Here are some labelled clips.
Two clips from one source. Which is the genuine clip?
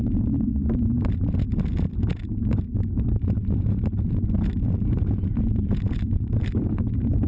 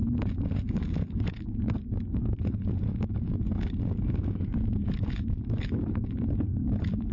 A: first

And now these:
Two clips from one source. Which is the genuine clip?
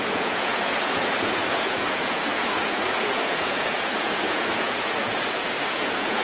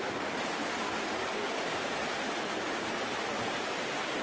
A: second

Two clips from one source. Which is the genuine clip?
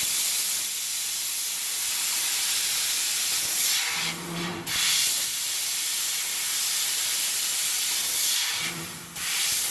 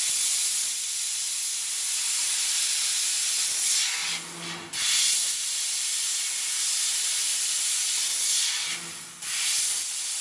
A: second